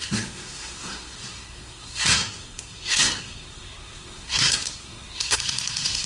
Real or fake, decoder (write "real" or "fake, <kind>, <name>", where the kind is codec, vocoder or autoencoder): fake, codec, SNAC